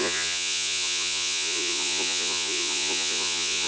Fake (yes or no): yes